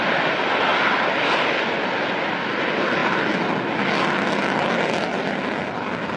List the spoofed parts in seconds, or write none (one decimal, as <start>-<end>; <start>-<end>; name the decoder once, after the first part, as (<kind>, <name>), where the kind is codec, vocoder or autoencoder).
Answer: none